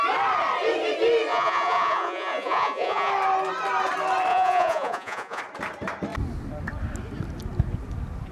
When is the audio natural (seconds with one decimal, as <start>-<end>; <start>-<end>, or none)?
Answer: 0.0-1.3; 3.1-4.3; 5.4-8.3